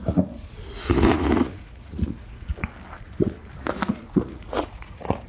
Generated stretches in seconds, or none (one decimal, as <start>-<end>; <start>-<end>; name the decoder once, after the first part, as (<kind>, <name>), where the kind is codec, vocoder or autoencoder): 0.0-2.5 (vocoder, Vocos); 3.0-5.3